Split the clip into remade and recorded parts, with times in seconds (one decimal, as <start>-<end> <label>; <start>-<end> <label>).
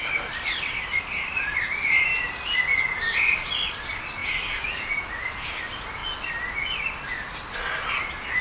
0.0-2.1 remade; 2.1-2.6 recorded; 2.6-6.0 remade; 6.0-6.8 recorded; 6.8-8.4 remade